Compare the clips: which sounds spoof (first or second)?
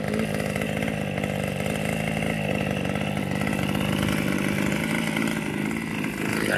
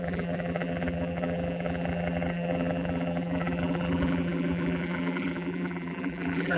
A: second